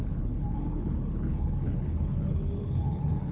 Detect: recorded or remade remade